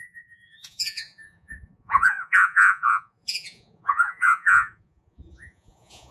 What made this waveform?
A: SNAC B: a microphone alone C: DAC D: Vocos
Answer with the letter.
D